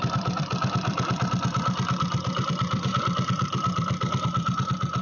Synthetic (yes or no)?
yes